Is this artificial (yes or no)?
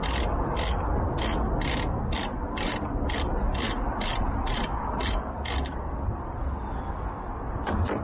no